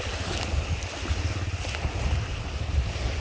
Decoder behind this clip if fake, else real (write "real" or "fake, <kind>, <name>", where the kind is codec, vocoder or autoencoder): real